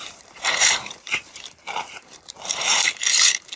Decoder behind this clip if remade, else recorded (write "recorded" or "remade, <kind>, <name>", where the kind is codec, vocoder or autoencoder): remade, vocoder, BigVGAN v2